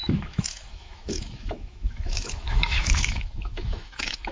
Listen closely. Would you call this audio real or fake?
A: fake